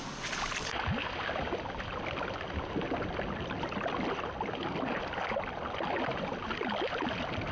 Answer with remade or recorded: recorded